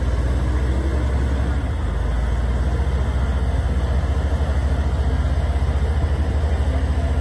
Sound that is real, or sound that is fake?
real